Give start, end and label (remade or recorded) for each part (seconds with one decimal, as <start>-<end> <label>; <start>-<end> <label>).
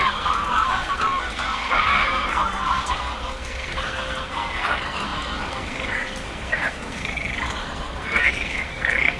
0.0-9.2 remade